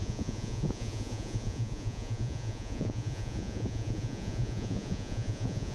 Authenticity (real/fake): fake